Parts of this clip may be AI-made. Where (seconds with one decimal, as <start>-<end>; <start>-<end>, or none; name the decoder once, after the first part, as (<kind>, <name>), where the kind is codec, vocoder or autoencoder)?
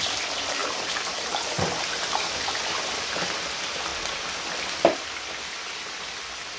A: 0.6-2.6 (vocoder, BigVGAN v2)